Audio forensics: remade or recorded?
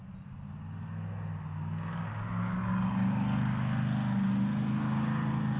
recorded